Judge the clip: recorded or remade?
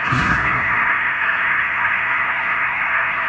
remade